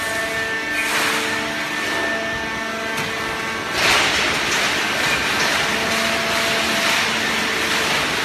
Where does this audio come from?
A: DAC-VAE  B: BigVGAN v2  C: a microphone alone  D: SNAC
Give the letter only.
C